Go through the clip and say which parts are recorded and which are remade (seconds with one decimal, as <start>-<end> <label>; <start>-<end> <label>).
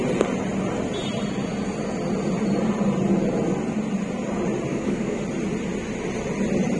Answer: 0.0-4.7 recorded; 4.7-5.2 remade; 5.2-6.8 recorded